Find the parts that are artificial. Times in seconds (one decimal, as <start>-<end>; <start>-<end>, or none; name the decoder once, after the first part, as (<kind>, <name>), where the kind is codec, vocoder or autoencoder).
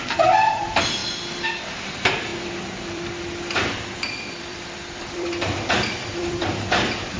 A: 0.0-1.0 (vocoder, BigVGAN v2); 1.8-7.2